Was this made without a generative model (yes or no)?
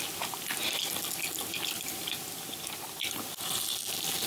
yes